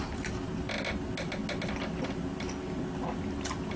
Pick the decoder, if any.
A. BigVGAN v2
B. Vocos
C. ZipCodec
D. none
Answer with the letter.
D